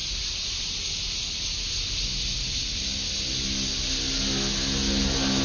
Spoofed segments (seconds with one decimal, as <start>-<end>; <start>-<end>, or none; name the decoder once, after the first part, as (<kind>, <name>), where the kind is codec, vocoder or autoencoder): none